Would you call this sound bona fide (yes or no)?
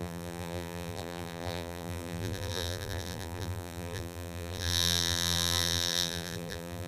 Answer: no